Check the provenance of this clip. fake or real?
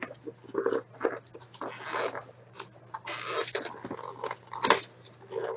real